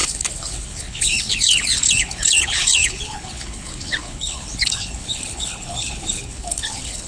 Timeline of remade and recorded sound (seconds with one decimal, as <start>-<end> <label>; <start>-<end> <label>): 0.0-7.1 remade